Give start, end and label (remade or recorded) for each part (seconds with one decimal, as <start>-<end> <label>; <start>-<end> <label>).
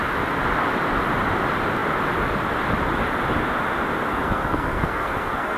0.0-4.1 recorded; 4.1-5.6 remade